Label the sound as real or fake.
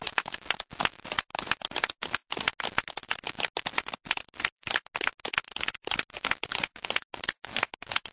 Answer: real